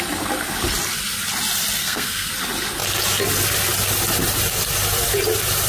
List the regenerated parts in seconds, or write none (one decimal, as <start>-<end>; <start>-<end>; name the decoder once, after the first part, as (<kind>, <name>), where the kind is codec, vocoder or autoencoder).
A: 1.8-2.3 (codec, SNAC)